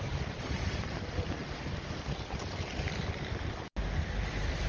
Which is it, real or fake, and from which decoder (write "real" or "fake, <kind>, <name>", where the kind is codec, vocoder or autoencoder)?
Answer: real